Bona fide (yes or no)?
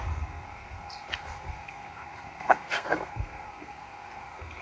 no